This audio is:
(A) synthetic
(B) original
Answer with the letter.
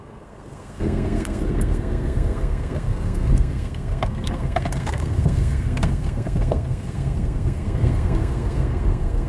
A